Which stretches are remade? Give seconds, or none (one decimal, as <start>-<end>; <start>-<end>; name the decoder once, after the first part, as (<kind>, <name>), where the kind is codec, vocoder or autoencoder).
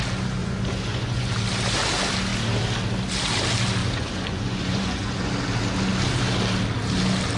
0.4-1.3 (vocoder, Vocos); 3.8-5.3